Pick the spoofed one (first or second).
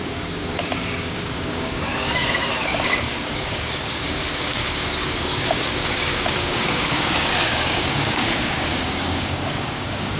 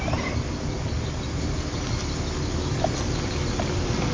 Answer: first